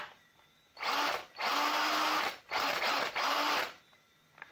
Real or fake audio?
real